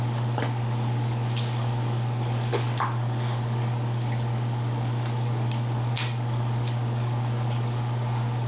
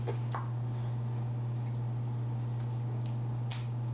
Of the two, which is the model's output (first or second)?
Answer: first